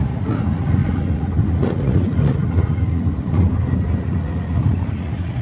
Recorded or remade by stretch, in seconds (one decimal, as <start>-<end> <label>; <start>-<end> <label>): 0.0-3.5 remade; 3.5-4.0 recorded; 4.0-5.4 remade